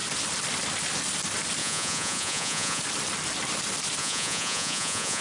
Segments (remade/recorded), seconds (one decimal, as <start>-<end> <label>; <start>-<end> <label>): 0.0-1.6 recorded; 1.6-2.8 remade; 2.8-4.0 recorded; 4.0-5.2 remade